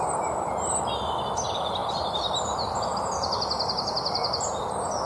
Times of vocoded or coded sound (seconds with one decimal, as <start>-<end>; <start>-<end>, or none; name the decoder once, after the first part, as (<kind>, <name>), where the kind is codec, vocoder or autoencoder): none